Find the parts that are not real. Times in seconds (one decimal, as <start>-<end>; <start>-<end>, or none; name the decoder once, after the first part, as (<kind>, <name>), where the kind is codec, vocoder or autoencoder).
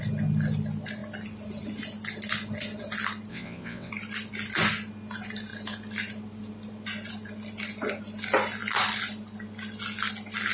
3.3-3.9 (vocoder, WaveNeXt)